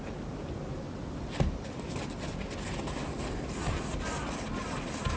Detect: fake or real real